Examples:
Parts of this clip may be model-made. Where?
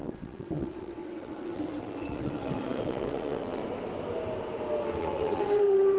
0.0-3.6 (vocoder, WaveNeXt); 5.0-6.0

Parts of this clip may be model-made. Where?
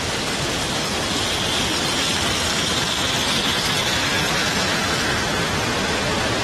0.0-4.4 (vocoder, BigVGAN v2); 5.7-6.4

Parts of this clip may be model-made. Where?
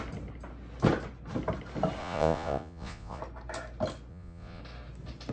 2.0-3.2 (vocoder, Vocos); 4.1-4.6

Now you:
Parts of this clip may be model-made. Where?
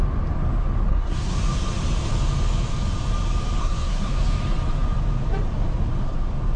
0.9-1.4 (codec, SNAC); 3.6-4.1